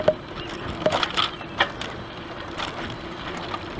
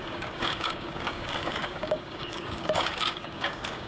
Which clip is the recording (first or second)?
first